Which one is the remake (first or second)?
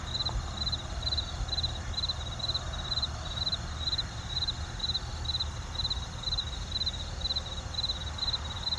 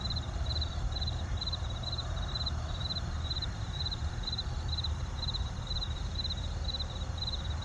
second